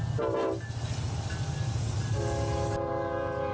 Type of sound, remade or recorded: recorded